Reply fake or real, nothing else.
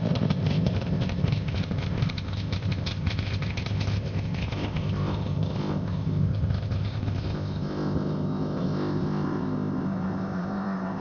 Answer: fake